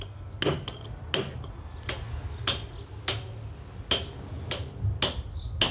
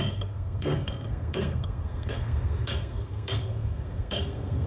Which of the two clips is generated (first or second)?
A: second